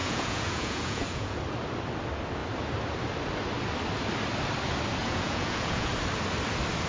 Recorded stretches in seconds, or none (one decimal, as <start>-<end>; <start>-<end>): 1.4-5.0; 5.9-6.9